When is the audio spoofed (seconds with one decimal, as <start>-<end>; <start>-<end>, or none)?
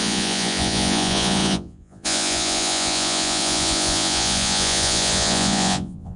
0.0-6.2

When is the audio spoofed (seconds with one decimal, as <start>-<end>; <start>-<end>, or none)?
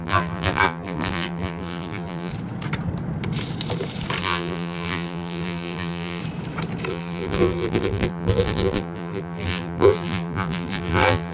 0.0-2.3; 4.2-6.2; 6.9-11.3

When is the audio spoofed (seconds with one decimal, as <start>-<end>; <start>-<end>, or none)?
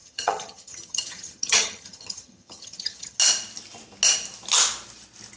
0.0-3.2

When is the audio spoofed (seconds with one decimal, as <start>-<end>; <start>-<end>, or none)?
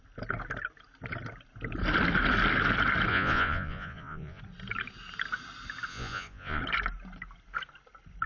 3.1-4.4; 5.9-6.6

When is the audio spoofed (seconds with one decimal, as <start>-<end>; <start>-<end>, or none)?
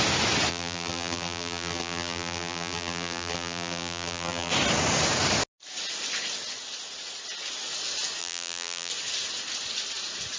0.5-4.5; 8.2-8.9